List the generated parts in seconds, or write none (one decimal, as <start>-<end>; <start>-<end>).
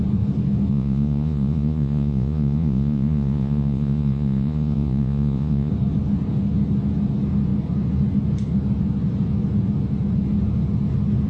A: 0.7-5.7